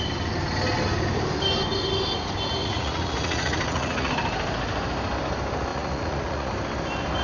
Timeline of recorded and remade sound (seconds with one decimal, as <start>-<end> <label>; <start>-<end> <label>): 0.0-2.6 recorded; 2.6-4.1 remade; 4.1-5.7 recorded; 5.7-6.5 remade; 6.5-7.2 recorded